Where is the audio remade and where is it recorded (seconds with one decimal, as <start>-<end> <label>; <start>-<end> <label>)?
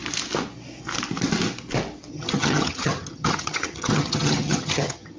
0.0-2.1 recorded; 2.1-5.2 remade